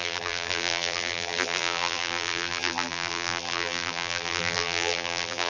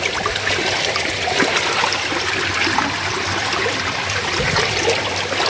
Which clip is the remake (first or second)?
first